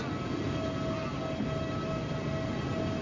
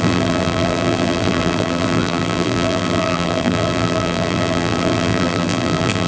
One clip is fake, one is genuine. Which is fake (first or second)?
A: second